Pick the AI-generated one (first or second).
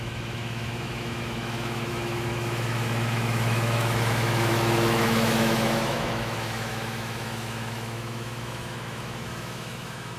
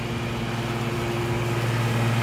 first